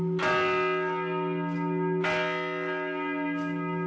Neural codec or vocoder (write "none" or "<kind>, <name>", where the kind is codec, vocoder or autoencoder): none